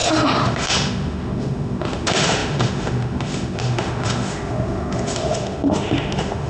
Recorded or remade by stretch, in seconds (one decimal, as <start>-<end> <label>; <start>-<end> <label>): 0.0-6.5 remade